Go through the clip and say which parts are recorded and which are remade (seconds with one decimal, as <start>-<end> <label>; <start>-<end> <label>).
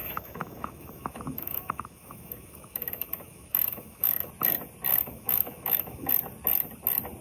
0.0-4.3 remade; 4.3-4.9 recorded; 4.9-6.1 remade; 6.1-7.2 recorded